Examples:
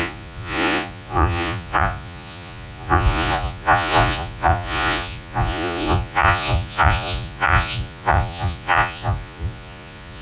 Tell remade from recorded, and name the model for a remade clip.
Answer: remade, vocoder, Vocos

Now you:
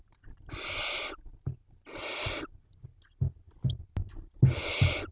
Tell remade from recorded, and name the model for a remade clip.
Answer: recorded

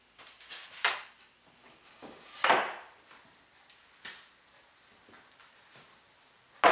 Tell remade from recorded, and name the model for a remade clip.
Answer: recorded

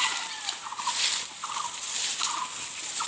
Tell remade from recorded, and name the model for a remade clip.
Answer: recorded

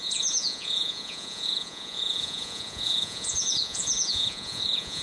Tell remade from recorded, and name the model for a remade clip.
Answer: remade, vocoder, Vocos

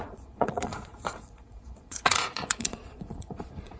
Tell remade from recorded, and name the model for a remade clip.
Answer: remade, vocoder, Vocos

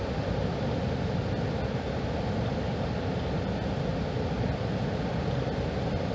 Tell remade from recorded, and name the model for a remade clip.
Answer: recorded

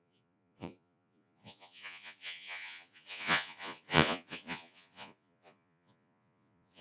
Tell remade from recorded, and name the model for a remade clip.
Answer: remade, vocoder, Vocos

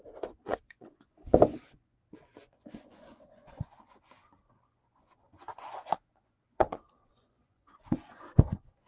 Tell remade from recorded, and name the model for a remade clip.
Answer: remade, vocoder, Vocos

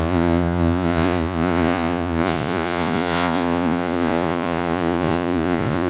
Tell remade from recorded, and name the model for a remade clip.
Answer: remade, vocoder, Vocos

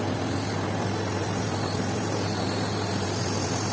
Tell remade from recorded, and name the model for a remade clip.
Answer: recorded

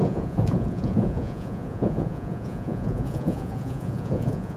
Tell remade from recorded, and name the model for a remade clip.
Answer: remade, vocoder, Vocos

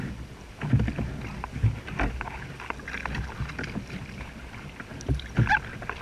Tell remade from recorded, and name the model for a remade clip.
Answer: recorded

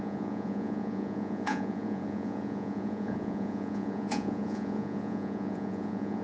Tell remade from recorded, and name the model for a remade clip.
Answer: remade, vocoder, Vocos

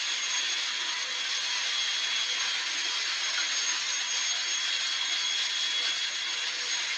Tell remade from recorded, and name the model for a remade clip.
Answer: recorded